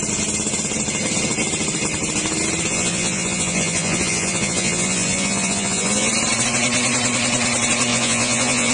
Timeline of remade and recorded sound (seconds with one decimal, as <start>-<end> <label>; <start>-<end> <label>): 0.0-2.7 recorded; 2.7-6.1 remade; 6.1-7.9 recorded; 7.9-8.7 remade